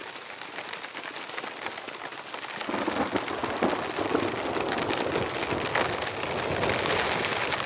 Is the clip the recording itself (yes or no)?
yes